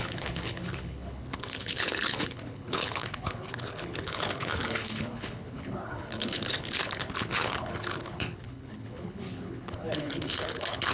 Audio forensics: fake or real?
fake